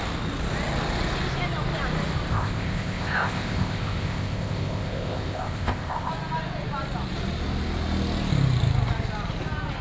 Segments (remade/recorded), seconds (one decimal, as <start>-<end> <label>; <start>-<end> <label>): 0.0-2.3 recorded; 2.3-6.1 remade; 6.1-9.8 recorded